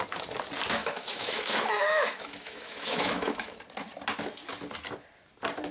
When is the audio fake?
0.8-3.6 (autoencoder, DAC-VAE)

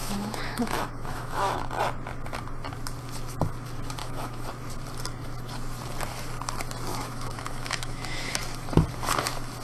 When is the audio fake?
0.0-1.7 (autoencoder, DAC-VAE); 4.0-4.5; 6.9-8.4

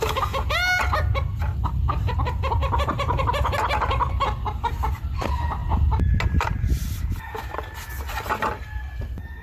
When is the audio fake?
none

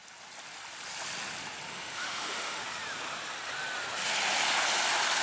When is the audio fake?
1.7-2.6 (autoencoder, DAC-VAE)